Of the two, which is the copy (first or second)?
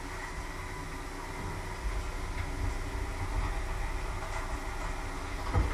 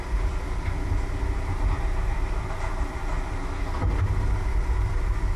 second